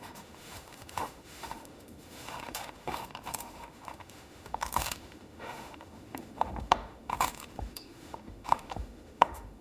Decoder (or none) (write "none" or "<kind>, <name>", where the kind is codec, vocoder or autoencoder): autoencoder, DAC-VAE